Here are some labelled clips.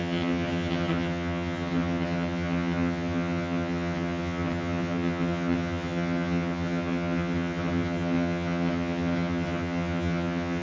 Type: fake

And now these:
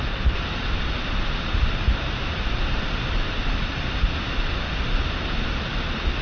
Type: real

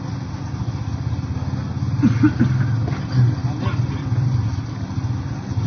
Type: real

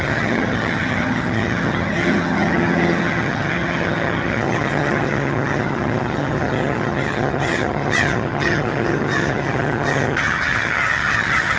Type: fake